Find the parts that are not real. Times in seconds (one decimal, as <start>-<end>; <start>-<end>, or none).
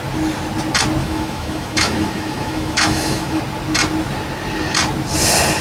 1.0-3.4